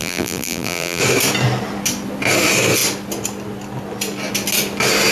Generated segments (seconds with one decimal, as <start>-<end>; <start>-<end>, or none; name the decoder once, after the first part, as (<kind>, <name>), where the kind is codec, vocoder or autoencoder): 0.0-1.0 (vocoder, BigVGAN v2)